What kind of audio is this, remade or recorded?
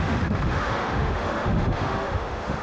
remade